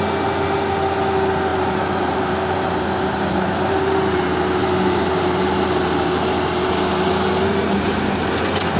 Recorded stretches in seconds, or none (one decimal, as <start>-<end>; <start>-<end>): 0.0-1.5; 3.7-4.6; 5.4-8.8